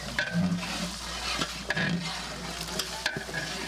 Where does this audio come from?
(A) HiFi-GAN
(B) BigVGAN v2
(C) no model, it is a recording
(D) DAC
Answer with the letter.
C